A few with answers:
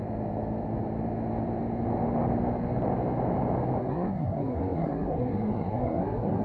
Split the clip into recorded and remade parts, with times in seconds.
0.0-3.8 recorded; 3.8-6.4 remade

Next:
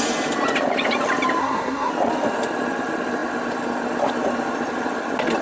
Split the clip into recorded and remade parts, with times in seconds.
0.0-1.4 recorded; 1.4-1.9 remade; 1.9-5.4 recorded

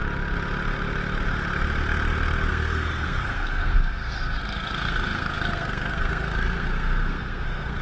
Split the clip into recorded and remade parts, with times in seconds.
0.0-2.5 recorded; 2.5-7.8 remade

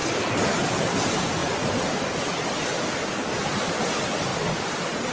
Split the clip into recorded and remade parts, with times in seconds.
0.0-5.1 recorded

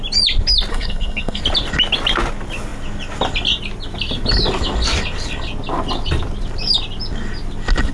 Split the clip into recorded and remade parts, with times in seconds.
0.0-0.7 recorded; 0.7-1.4 remade; 1.4-7.9 recorded

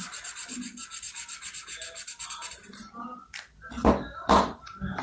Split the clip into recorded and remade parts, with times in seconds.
0.0-5.0 recorded

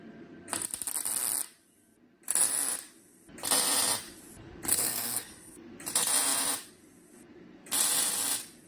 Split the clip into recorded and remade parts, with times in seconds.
0.0-4.7 recorded; 4.7-5.7 remade; 5.7-8.7 recorded

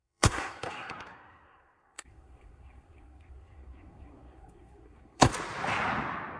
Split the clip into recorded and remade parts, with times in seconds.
0.0-5.3 remade; 5.3-6.4 recorded